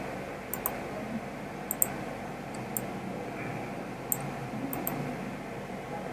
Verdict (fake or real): real